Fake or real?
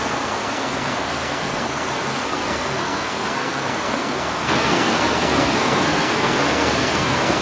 fake